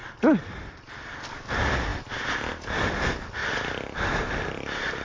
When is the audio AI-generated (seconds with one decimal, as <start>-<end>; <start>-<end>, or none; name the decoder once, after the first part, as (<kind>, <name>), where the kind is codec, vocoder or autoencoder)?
none

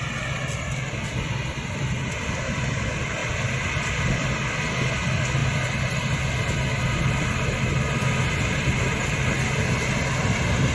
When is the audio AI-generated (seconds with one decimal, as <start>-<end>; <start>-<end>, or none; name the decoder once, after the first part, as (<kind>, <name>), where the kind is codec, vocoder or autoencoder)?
3.2-4.0 (vocoder, BigVGAN v2)

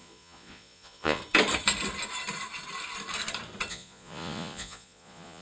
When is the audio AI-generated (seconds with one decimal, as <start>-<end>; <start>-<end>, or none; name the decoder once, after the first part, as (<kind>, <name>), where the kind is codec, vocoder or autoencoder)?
0.0-1.2 (vocoder, Vocos); 3.7-5.4

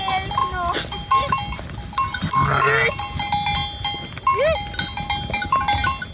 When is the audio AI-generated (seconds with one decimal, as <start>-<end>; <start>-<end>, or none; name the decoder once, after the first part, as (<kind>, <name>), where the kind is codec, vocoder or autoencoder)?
none

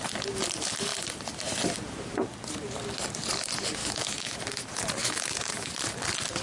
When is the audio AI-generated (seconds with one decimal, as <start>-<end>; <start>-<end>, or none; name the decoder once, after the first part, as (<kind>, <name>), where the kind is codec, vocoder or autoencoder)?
3.8-4.4 (autoencoder, DAC-VAE); 5.0-5.7

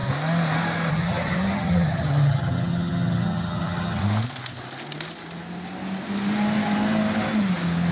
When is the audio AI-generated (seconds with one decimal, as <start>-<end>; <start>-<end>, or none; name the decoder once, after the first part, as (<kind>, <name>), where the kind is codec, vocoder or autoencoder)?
0.9-4.0 (vocoder, HiFi-GAN)

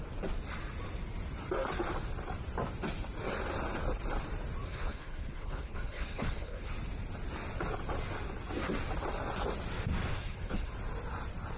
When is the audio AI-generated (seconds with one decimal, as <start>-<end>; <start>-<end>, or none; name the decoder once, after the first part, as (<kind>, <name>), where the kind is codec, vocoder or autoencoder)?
4.7-6.7 (codec, HILCodec); 10.1-10.7